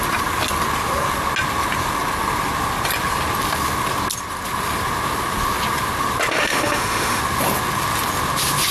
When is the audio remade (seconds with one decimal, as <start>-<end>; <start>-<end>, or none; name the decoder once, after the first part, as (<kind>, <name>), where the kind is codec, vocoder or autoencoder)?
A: 6.3-7.2 (autoencoder, DAC-VAE)